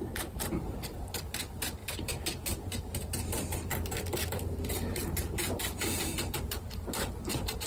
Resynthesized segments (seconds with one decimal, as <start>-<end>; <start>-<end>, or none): 0.0-7.7

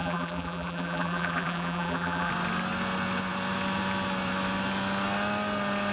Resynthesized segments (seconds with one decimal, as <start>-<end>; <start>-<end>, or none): 0.0-2.3

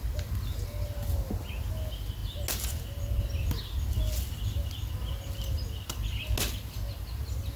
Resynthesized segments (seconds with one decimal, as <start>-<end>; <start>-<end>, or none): none

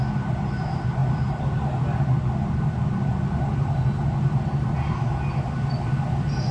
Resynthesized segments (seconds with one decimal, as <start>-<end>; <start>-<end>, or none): none

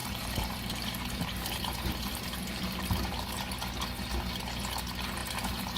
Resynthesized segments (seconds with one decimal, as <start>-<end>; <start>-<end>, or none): 0.0-3.5; 5.2-5.8